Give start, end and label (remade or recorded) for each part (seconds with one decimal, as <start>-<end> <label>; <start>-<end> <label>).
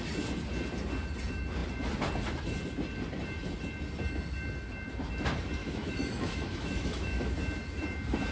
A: 0.0-5.6 recorded; 5.6-7.3 remade; 7.3-8.3 recorded